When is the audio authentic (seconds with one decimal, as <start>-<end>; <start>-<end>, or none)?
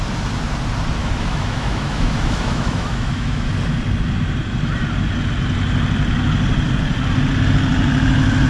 0.0-1.0; 3.5-8.5